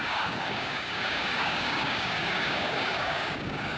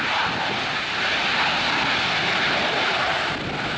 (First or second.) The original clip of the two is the second